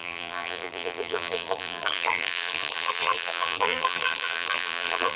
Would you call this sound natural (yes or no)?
no